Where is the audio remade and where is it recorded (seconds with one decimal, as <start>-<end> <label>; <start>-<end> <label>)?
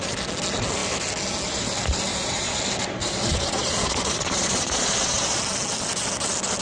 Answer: 0.0-2.1 recorded; 2.1-2.6 remade; 2.6-3.0 recorded; 3.0-5.4 remade; 5.4-6.6 recorded